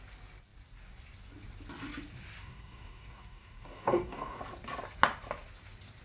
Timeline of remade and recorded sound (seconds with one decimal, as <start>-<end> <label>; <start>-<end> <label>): 0.0-2.4 recorded; 2.4-4.4 remade; 4.4-6.0 recorded